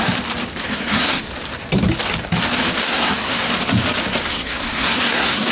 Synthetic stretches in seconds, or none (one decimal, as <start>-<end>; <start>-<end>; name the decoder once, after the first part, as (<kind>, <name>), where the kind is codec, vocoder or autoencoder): 0.7-1.3 (codec, SNAC); 2.8-3.5; 4.3-5.5